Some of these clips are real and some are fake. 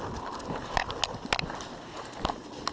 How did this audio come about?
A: real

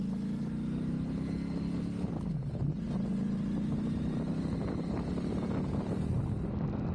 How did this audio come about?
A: real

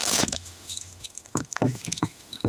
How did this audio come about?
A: fake